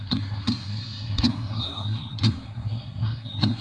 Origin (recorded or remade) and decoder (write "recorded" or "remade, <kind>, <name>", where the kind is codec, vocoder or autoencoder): remade, codec, SNAC